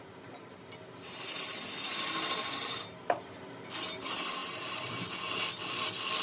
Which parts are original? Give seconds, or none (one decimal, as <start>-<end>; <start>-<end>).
0.0-6.2